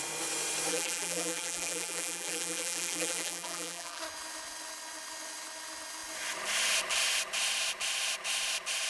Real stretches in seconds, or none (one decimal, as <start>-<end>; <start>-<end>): 0.0-0.7; 4.0-8.9